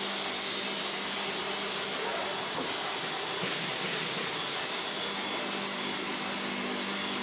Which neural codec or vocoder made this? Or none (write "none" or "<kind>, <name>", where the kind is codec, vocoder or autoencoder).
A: none